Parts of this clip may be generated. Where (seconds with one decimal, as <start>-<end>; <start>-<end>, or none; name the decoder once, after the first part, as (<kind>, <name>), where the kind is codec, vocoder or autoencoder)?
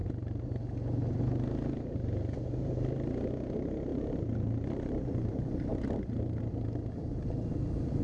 3.9-5.0 (vocoder, BigVGAN v2)